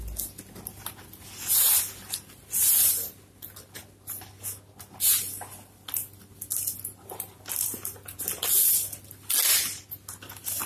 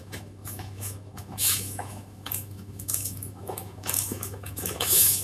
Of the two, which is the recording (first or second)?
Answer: first